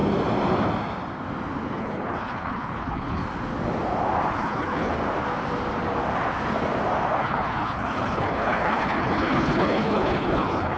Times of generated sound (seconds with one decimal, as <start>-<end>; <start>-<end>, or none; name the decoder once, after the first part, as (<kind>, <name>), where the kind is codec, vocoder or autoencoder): 1.8-3.2 (codec, HILCodec); 4.3-5.0; 7.2-10.8